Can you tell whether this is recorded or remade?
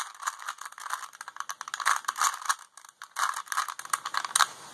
recorded